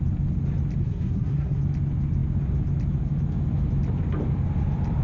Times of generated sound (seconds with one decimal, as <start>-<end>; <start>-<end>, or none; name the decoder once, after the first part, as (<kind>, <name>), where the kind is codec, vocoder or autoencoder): 0.8-1.6 (codec, SNAC)